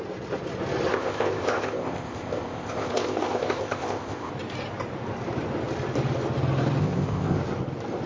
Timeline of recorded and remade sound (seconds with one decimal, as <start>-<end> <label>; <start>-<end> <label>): 0.0-0.9 recorded; 0.9-4.3 remade; 4.3-6.8 recorded; 6.8-7.4 remade; 7.4-8.1 recorded